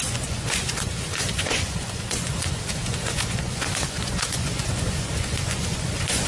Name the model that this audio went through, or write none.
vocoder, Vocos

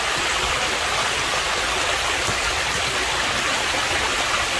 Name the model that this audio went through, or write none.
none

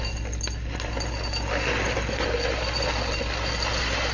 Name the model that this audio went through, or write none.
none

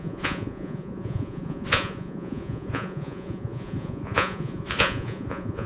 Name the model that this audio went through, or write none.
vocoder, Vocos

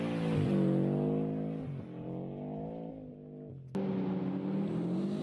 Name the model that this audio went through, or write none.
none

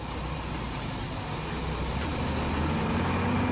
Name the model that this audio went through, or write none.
none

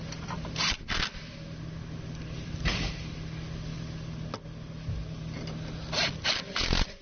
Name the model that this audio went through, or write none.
none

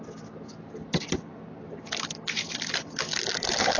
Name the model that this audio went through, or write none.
none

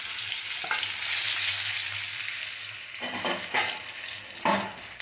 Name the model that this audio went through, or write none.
none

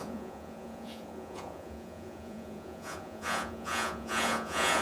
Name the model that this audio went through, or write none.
vocoder, Vocos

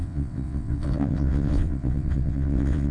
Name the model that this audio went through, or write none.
vocoder, WaveNeXt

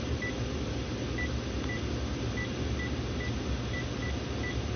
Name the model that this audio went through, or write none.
none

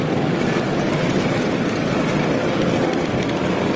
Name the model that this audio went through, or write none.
none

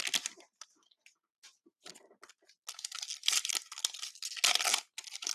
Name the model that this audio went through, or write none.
none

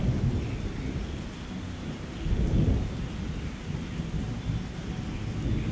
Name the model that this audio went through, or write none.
none